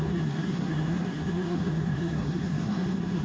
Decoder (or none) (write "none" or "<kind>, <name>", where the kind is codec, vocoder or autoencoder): codec, SNAC